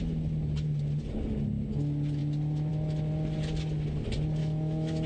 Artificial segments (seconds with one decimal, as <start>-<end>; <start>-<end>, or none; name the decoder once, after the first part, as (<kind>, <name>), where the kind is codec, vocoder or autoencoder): 4.4-5.1 (autoencoder, DAC-VAE)